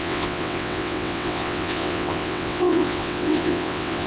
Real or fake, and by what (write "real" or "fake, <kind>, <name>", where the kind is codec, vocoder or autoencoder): fake, vocoder, WaveNeXt